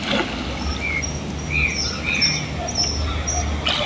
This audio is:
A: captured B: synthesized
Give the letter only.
A